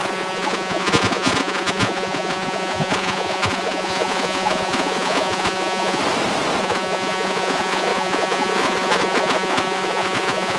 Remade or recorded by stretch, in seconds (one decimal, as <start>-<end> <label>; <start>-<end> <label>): 0.0-6.0 remade; 6.0-6.6 recorded; 6.6-10.6 remade